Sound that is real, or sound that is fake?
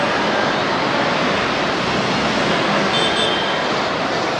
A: real